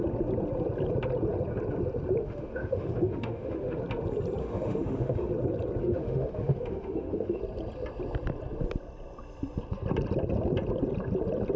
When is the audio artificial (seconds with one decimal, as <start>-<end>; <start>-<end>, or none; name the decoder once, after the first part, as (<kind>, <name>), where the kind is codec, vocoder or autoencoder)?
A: 2.2-3.8 (autoencoder, DAC-VAE); 4.4-5.3; 5.8-7.4

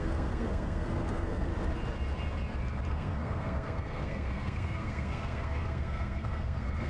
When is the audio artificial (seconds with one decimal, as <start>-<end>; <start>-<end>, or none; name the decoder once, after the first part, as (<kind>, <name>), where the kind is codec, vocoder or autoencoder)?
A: 0.0-1.5 (codec, SNAC); 2.9-6.9

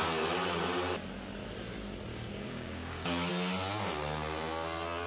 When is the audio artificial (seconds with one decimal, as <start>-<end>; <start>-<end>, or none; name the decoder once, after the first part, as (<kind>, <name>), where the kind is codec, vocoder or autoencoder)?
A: 2.1-3.3 (codec, DAC)

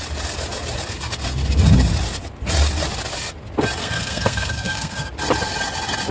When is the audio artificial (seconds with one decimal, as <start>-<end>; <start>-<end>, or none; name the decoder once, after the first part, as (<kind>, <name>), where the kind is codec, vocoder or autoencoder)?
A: 3.8-5.1 (codec, SNAC)

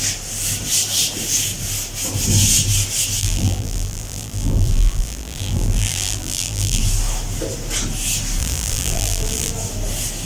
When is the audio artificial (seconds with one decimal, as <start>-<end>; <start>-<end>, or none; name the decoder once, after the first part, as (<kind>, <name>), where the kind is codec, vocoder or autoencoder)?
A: 3.2-6.8 (vocoder, BigVGAN v2); 8.4-9.5

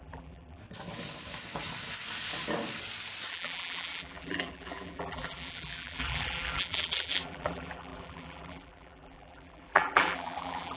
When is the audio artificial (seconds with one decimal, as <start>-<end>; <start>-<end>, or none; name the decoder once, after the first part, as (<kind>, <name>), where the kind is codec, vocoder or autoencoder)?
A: 0.0-0.6 (vocoder, BigVGAN v2); 3.3-10.8